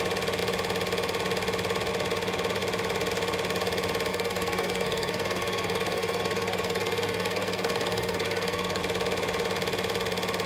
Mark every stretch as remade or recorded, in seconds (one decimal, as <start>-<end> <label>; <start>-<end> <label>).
0.0-4.1 recorded; 4.1-8.8 remade; 8.8-10.5 recorded